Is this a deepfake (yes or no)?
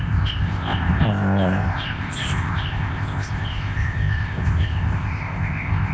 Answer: yes